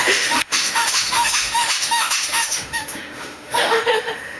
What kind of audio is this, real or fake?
fake